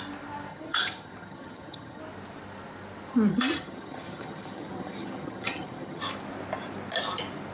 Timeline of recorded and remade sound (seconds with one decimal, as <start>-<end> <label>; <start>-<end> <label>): 0.0-0.5 recorded; 0.5-2.0 remade; 2.0-3.3 recorded; 3.3-6.0 remade; 6.0-7.5 recorded